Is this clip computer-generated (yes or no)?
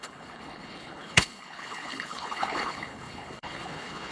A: yes